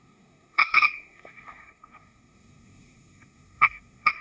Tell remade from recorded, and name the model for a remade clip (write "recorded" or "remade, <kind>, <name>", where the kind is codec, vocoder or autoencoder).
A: remade, codec, SNAC